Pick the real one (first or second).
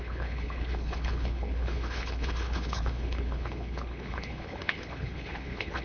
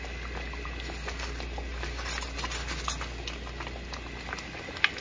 second